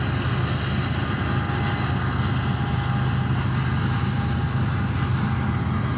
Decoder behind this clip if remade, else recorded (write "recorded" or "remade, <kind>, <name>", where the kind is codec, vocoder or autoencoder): recorded